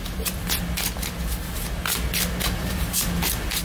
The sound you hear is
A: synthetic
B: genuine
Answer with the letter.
B